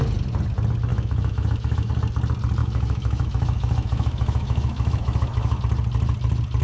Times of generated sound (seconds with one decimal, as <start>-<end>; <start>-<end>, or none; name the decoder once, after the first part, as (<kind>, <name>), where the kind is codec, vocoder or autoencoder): 0.9-1.9 (autoencoder, DAC-VAE); 2.6-5.6